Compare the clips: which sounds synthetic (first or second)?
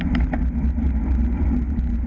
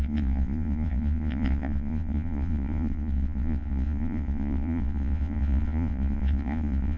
second